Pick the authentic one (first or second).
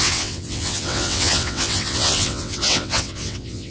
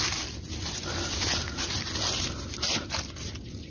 second